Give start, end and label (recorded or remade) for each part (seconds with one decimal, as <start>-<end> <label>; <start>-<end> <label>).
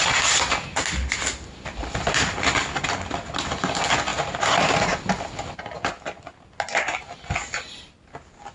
0.0-8.5 recorded